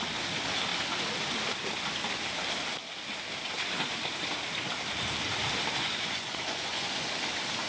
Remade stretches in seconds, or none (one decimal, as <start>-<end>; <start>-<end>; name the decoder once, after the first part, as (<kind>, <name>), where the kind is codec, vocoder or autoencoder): 5.8-7.1 (vocoder, Vocos)